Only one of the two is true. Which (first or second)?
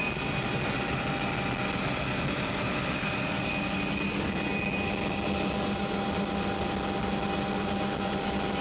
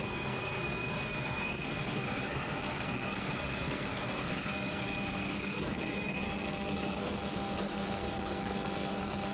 first